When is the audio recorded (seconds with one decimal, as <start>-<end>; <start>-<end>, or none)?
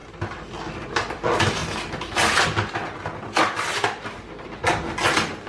0.0-5.5